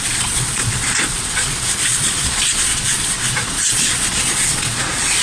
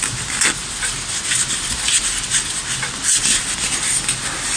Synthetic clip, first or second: first